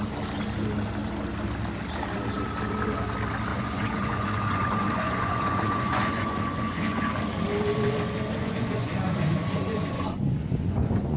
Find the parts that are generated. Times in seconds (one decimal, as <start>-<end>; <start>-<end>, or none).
3.5-7.1; 8.4-11.2